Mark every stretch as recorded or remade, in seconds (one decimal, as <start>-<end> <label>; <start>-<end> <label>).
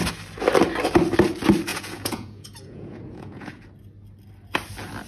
0.0-1.7 recorded; 1.7-3.6 remade; 3.6-5.1 recorded